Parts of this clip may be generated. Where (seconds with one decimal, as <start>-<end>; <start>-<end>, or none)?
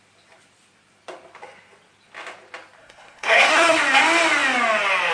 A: 2.8-3.8